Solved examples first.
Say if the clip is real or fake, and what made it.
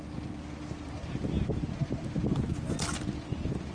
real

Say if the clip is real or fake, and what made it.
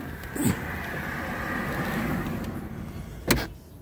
real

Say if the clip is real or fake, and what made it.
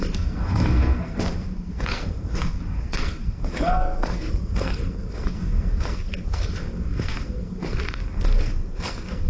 fake, codec, SNAC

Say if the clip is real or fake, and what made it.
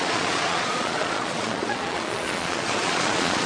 fake, vocoder, Vocos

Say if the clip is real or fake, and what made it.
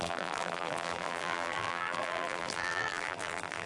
fake, vocoder, BigVGAN v2